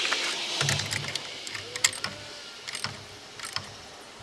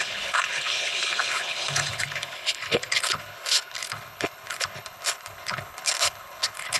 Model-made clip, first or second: second